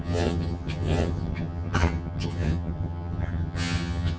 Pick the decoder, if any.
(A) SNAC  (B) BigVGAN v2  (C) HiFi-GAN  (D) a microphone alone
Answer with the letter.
C